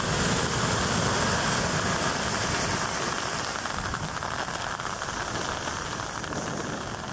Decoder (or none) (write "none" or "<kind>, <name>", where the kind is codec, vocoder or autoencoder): none